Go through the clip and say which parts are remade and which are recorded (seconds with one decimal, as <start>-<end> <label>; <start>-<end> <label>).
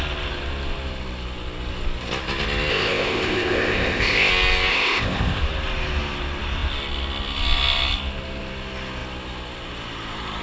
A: 0.0-2.7 recorded; 2.7-4.3 remade; 4.3-4.7 recorded; 4.7-5.4 remade; 5.4-10.4 recorded